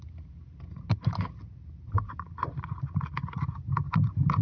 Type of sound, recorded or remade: recorded